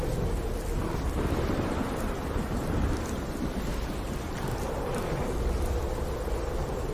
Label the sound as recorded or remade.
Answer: recorded